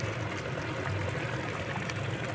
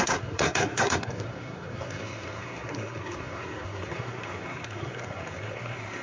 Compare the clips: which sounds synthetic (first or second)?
second